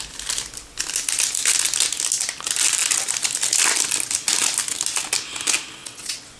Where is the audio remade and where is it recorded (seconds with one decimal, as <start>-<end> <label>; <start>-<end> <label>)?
0.0-5.8 recorded; 5.8-6.4 remade